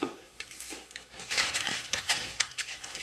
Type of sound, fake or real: fake